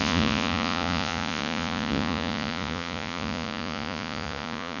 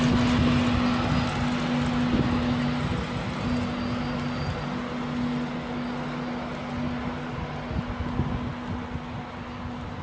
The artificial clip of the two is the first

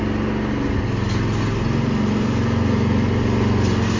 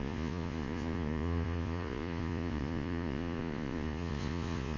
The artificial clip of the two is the second